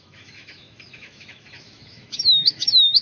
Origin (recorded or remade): remade